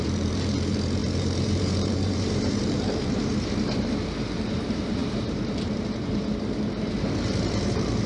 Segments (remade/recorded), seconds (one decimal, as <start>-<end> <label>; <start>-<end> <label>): 0.0-8.1 remade